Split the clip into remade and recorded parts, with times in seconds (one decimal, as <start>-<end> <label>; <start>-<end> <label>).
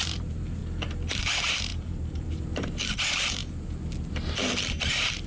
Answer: 0.0-0.6 remade; 0.6-1.2 recorded; 1.2-3.4 remade; 3.4-4.3 recorded; 4.3-5.3 remade